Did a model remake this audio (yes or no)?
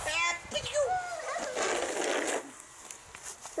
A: no